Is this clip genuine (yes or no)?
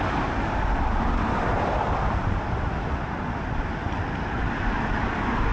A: yes